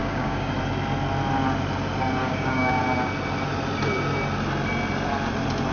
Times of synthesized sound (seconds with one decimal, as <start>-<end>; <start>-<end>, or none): 0.0-0.5; 2.2-2.8